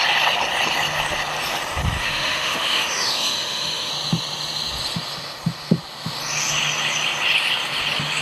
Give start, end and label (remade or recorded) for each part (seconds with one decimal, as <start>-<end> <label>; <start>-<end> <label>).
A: 0.0-2.0 recorded; 2.0-3.9 remade; 3.9-8.2 recorded